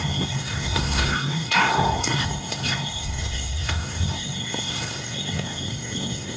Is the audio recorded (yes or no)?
no